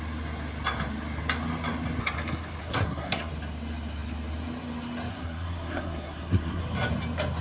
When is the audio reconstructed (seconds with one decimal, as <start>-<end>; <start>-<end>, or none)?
2.6-3.3; 5.1-6.6